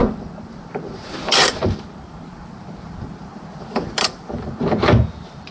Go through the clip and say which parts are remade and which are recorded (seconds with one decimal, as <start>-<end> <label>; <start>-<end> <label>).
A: 0.0-3.3 remade; 3.3-4.4 recorded; 4.4-5.5 remade